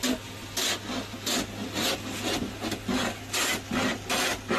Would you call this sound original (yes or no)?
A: yes